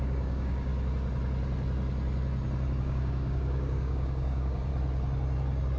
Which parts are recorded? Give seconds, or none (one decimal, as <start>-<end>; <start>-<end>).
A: 0.7-2.8; 4.7-5.8